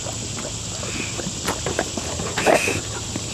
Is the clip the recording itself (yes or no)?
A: yes